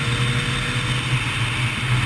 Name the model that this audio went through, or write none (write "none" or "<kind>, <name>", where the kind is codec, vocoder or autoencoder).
none